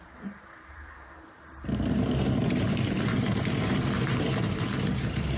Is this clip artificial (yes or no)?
yes